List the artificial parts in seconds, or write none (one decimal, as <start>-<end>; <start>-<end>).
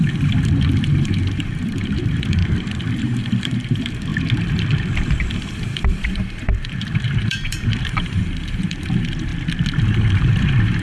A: 0.0-2.4; 3.0-4.1; 5.4-9.3; 9.8-10.8